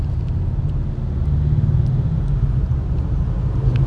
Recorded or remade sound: recorded